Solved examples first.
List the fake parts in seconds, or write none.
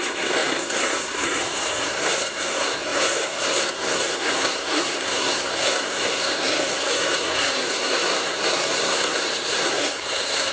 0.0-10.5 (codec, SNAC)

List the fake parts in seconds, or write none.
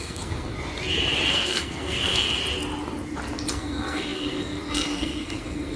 0.0-0.5 (codec, SNAC); 1.3-2.4; 3.5-5.8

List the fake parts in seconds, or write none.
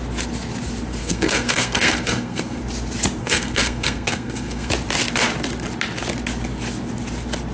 1.0-2.6 (codec, SNAC); 3.2-4.7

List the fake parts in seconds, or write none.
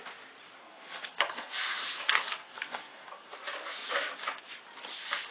0.6-3.4 (codec, SNAC)